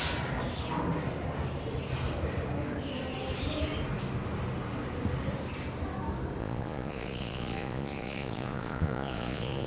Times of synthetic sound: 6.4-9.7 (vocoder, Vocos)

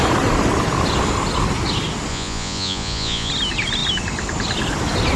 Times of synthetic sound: 2.1-3.3 (vocoder, Vocos)